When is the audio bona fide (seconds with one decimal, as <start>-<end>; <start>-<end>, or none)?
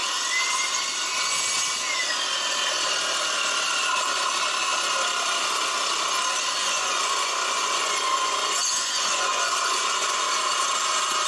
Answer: 0.0-6.6; 10.2-11.3